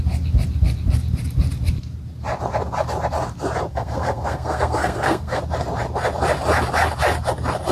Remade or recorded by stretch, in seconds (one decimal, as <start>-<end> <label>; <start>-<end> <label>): 0.0-3.7 recorded; 3.7-5.4 remade; 5.4-7.7 recorded